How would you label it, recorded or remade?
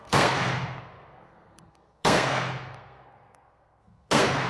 remade